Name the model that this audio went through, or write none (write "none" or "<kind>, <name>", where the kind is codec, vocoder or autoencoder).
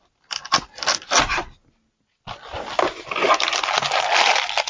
none